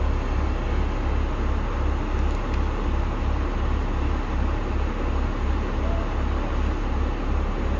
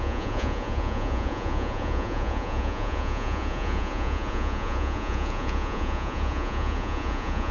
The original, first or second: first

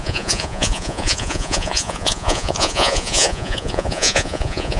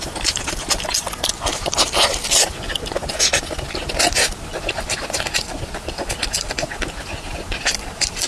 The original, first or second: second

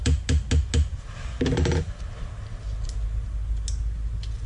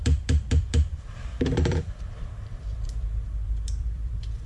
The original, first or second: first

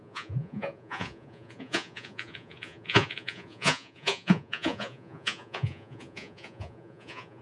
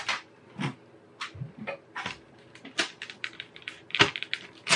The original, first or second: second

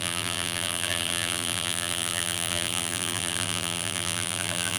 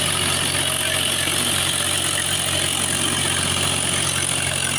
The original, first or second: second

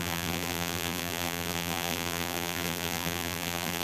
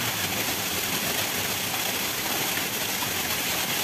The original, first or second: second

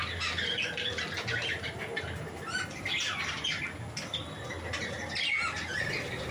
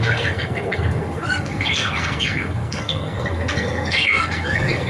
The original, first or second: first